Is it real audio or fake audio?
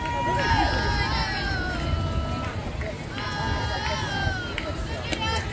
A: real